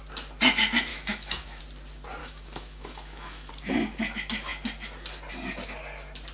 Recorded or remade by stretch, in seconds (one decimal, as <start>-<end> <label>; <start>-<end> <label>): 0.0-0.9 recorded; 0.9-1.6 remade; 1.6-2.2 recorded; 2.2-3.5 remade; 3.5-6.3 recorded